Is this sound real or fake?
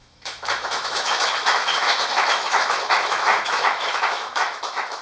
fake